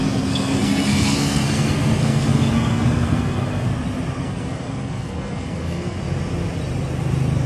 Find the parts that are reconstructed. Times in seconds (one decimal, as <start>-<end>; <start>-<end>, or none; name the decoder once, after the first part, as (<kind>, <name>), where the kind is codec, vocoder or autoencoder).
0.0-3.7 (codec, SNAC); 4.2-6.0